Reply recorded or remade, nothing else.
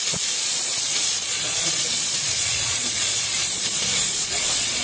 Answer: remade